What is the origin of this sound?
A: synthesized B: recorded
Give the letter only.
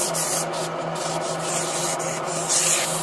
B